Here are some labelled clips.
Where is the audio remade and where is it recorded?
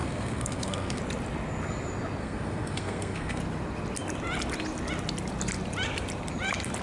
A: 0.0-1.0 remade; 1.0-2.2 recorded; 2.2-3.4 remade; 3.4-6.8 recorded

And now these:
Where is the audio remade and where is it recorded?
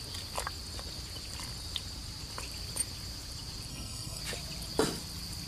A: 0.0-3.7 recorded; 3.7-4.2 remade; 4.2-5.5 recorded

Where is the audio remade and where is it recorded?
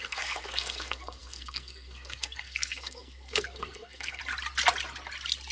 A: 0.0-4.2 remade; 4.2-5.5 recorded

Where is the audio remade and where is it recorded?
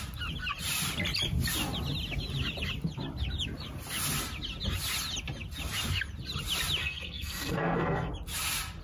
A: 0.0-6.8 recorded; 6.8-8.1 remade; 8.1-8.8 recorded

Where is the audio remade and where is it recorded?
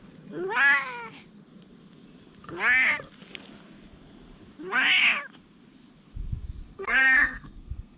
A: 0.0-6.7 recorded; 6.7-8.0 remade